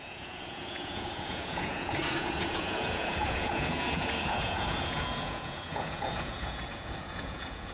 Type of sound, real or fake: fake